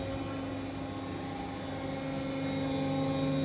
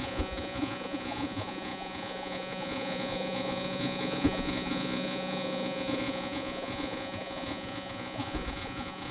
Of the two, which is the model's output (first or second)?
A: second